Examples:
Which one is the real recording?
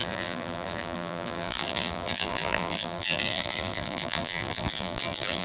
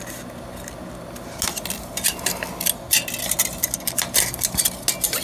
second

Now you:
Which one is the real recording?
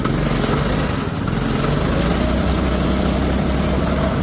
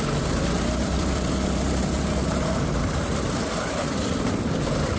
first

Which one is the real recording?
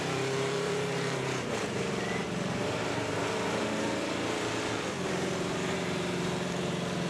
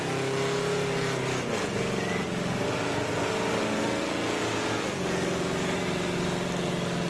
second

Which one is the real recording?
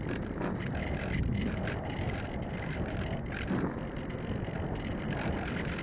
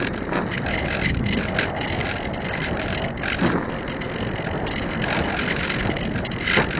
second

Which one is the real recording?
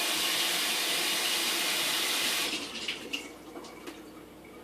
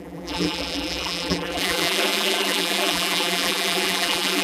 first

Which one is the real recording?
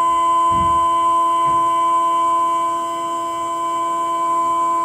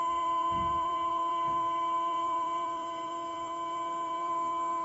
first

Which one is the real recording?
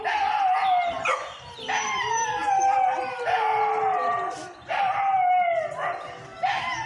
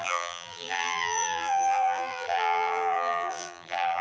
first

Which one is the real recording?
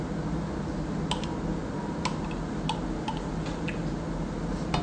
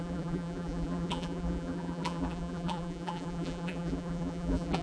first